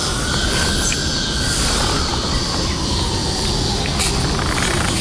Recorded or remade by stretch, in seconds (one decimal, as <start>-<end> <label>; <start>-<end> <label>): 0.0-1.0 remade; 1.0-1.6 recorded; 1.6-3.2 remade; 3.2-4.5 recorded; 4.5-5.0 remade